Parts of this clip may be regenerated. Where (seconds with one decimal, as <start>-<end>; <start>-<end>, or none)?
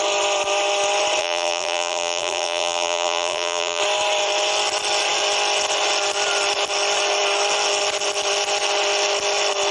1.2-3.8